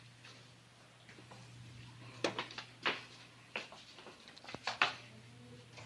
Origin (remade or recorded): recorded